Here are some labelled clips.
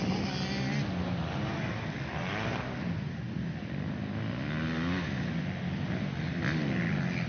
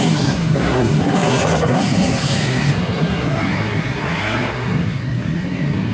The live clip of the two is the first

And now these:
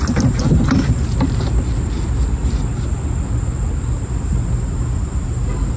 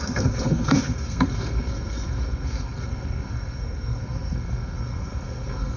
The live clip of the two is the first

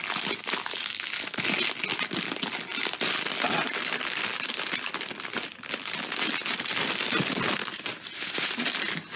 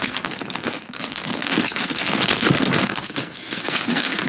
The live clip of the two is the first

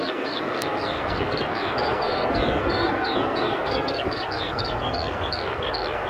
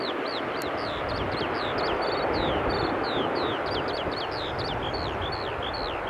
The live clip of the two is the second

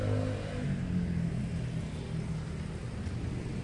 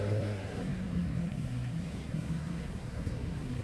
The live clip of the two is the first